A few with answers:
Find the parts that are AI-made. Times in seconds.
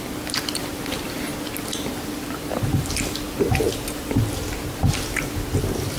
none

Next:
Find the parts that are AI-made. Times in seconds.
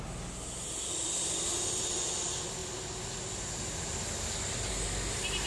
none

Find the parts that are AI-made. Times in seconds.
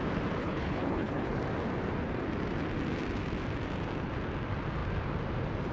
0.4-1.4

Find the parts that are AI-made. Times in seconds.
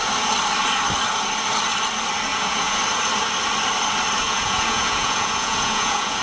2.3-2.8; 4.2-6.2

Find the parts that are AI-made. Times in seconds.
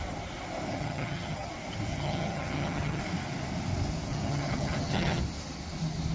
0.7-1.5; 1.9-3.0; 4.1-5.2